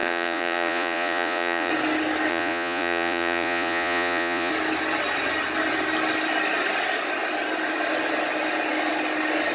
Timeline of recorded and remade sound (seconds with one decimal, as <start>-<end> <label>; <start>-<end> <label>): 0.0-1.7 remade; 1.7-2.3 recorded; 2.3-4.5 remade; 4.5-9.5 recorded